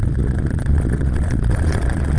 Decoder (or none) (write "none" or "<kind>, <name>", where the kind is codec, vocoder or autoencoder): vocoder, Vocos